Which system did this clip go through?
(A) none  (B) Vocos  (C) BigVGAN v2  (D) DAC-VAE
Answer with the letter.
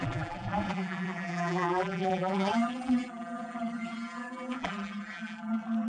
C